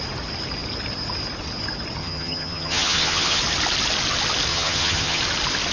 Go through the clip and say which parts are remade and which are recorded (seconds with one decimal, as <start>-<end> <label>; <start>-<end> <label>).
0.0-2.0 recorded; 2.0-3.4 remade; 3.4-4.5 recorded; 4.5-5.2 remade; 5.2-5.7 recorded